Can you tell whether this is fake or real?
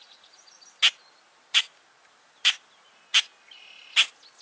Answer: real